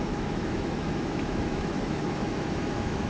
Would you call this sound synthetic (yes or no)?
yes